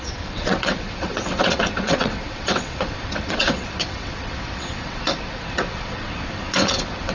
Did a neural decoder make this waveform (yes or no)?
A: yes